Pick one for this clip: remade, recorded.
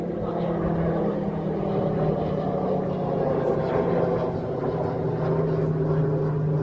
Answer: recorded